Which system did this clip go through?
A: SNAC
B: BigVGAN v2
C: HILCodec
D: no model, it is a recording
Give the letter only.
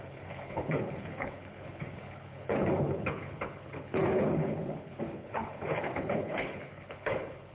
C